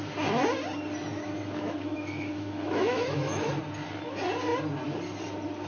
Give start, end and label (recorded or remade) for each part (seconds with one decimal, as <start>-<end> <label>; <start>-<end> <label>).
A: 0.0-1.1 recorded; 1.1-3.5 remade; 3.5-5.7 recorded

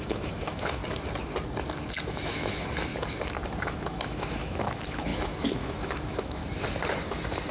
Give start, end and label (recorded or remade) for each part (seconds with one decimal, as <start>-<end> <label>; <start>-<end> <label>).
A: 0.0-0.8 remade; 0.8-2.1 recorded; 2.1-2.9 remade; 2.9-3.6 recorded; 3.6-6.4 remade; 6.4-7.5 recorded